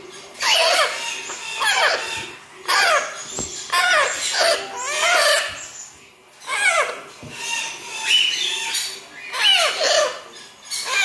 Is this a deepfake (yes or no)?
no